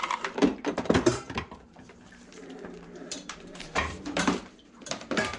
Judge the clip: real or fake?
fake